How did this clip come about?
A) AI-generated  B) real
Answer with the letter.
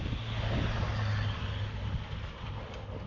B